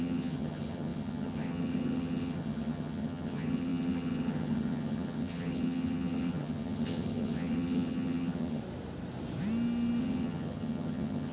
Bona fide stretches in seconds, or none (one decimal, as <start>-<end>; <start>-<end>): 8.6-10.0

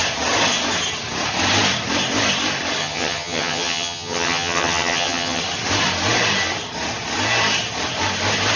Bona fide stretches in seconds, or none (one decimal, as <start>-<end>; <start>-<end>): 0.0-2.8; 5.4-8.6

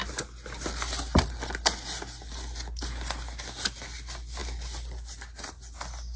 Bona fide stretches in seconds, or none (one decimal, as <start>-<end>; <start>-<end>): 0.0-6.2

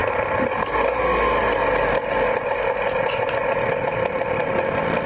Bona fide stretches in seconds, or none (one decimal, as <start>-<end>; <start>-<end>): 0.0-5.1

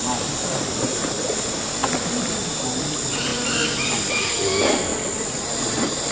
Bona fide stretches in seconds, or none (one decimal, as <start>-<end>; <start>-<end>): 0.0-6.1

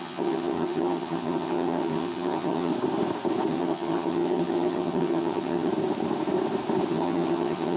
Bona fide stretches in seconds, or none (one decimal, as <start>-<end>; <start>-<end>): 2.7-3.5; 5.7-6.9

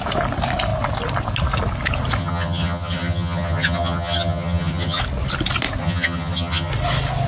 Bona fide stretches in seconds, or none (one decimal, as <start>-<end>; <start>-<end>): 0.0-2.2; 5.0-5.8; 6.7-7.3

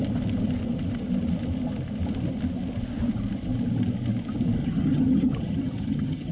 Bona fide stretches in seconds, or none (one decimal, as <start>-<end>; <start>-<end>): 0.0-4.6